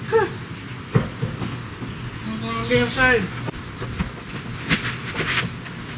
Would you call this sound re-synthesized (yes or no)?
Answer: no